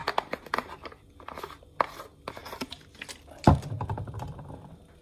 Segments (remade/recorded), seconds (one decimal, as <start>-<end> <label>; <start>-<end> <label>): 0.0-5.0 recorded